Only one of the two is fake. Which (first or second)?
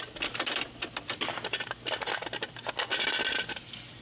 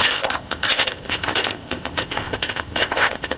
second